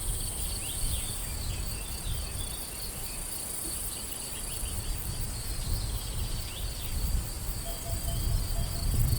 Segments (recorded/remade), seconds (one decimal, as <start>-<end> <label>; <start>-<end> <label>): 0.0-9.2 recorded